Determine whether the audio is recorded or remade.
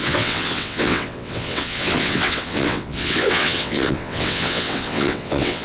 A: remade